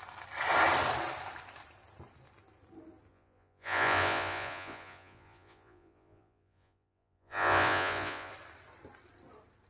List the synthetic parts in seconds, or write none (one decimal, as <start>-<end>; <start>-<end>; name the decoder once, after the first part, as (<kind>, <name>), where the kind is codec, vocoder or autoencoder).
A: 3.1-8.3 (vocoder, Vocos)